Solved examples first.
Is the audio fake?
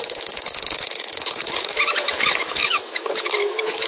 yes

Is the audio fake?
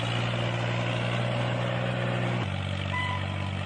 no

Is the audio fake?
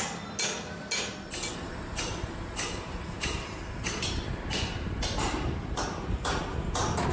no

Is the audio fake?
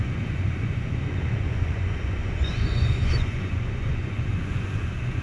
yes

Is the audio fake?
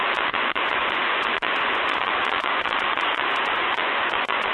yes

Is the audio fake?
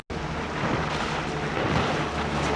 no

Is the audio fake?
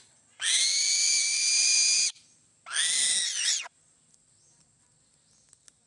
no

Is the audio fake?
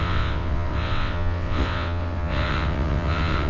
yes